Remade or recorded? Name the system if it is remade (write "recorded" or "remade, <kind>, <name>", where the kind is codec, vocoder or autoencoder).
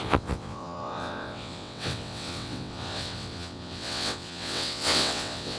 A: remade, vocoder, WaveNeXt